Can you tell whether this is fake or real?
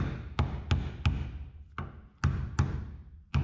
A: real